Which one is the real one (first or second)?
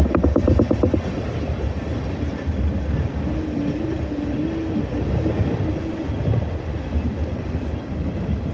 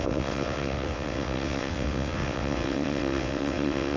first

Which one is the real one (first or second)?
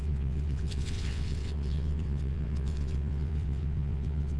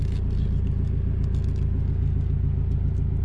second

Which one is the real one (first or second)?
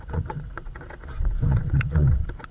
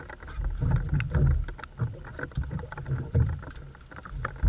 second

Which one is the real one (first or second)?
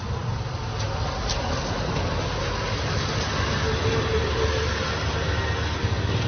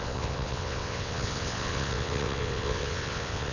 first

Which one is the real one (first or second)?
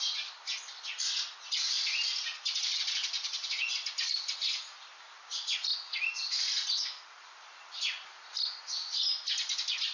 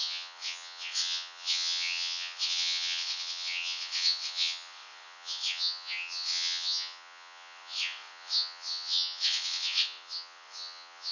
first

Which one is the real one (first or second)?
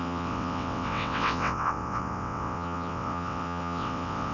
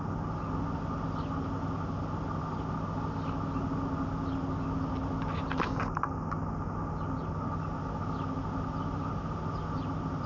second